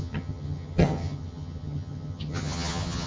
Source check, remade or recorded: remade